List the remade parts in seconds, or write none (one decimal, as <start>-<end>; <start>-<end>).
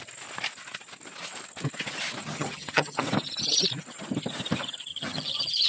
2.2-3.0; 4.9-5.7